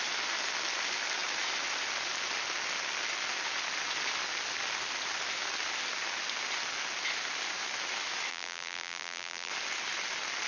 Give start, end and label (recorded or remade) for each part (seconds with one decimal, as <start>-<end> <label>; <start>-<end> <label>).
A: 0.0-8.3 recorded; 8.3-9.5 remade; 9.5-10.5 recorded